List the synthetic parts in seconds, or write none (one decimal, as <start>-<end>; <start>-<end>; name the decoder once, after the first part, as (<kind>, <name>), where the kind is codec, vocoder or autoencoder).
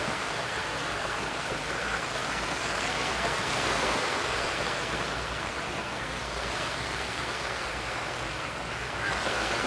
0.0-9.7 (codec, SNAC)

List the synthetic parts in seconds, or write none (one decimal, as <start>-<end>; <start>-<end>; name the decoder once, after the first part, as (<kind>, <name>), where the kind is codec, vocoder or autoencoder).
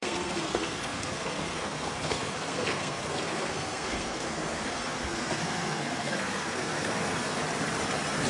0.0-7.4 (codec, SNAC)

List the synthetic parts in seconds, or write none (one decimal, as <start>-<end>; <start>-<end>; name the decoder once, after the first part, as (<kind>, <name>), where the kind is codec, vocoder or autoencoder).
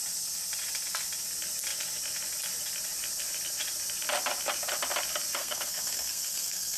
5.4-6.8 (codec, SNAC)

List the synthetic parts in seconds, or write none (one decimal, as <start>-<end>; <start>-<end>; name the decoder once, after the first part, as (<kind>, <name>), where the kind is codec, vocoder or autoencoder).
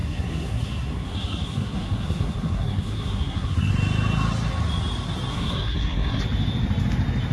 0.0-3.7 (codec, SNAC); 5.3-6.2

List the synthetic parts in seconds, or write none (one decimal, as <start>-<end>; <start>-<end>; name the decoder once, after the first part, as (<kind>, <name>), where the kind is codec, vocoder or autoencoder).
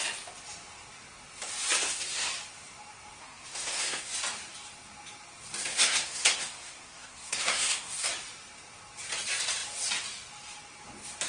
1.8-2.3 (codec, SNAC); 3.2-4.1; 5.6-8.1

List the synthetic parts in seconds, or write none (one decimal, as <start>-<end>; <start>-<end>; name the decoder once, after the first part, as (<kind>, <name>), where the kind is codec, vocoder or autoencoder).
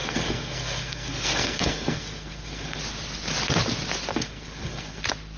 0.0-2.8 (codec, SNAC); 4.1-5.0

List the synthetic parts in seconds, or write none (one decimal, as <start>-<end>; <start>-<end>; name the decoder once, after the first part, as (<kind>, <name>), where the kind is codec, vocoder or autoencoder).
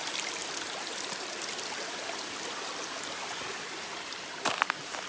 none